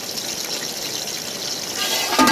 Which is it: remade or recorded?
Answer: recorded